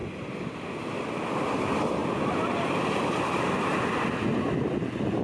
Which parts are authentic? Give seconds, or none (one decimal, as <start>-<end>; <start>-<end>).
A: 0.0-5.2